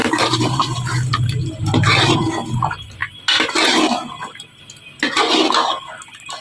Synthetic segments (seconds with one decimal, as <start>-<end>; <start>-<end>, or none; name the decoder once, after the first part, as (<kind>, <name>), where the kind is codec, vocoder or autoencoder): 0.0-1.6 (vocoder, BigVGAN v2)